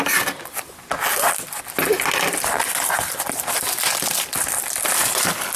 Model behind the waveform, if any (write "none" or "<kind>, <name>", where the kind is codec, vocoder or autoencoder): none